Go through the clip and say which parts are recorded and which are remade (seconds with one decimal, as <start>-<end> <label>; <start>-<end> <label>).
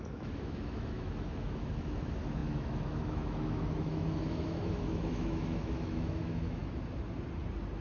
0.0-6.6 remade; 6.6-7.8 recorded